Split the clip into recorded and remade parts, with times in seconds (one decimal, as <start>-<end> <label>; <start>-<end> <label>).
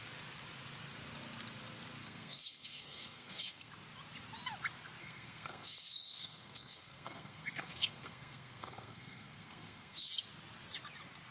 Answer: 0.0-2.0 recorded; 2.0-3.7 remade; 3.7-5.0 recorded; 5.0-10.1 remade; 10.1-11.3 recorded